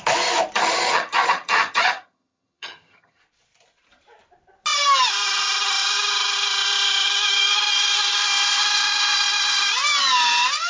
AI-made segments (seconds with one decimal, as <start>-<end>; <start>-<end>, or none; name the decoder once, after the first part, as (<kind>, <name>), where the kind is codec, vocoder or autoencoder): 0.6-3.2 (vocoder, HiFi-GAN)